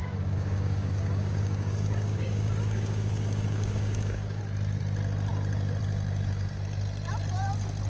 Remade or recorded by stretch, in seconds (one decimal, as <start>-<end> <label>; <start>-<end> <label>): 0.0-4.4 remade; 4.4-7.9 recorded